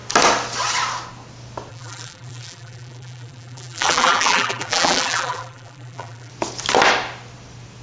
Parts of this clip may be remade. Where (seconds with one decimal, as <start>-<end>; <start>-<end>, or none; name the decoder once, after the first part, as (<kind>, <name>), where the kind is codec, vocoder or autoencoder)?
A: 1.7-6.3 (vocoder, BigVGAN v2)